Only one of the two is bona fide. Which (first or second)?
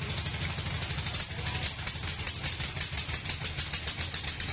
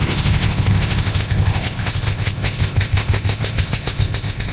first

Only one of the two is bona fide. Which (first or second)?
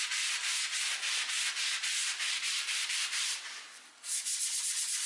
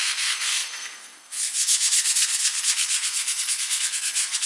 first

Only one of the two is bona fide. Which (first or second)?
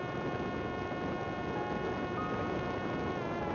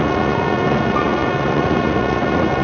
first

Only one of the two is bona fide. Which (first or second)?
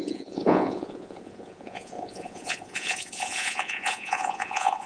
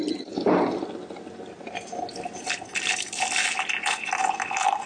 second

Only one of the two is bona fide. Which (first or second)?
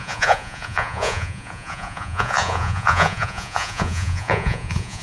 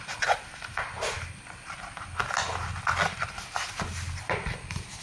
second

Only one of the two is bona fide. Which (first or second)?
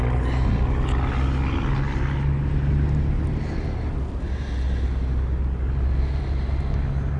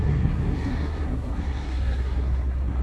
first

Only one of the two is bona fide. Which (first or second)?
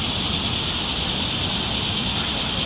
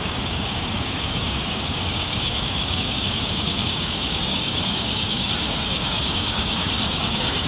first